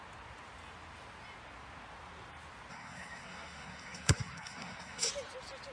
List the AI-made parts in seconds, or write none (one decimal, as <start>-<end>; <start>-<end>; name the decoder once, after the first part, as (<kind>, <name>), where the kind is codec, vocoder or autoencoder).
2.7-5.1 (codec, SNAC)